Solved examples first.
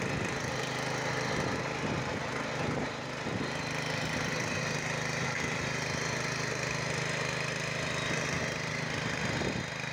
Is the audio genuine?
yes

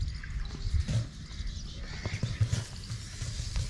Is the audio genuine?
yes